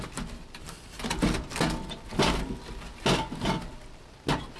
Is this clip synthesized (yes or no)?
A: no